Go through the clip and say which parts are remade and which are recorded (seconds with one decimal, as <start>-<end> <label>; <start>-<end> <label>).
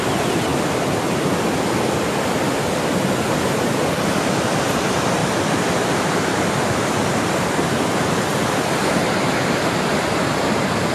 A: 0.0-5.2 recorded; 5.2-6.4 remade; 6.4-10.9 recorded